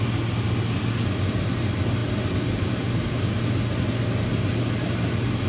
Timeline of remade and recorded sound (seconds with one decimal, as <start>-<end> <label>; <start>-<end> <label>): 0.0-5.5 recorded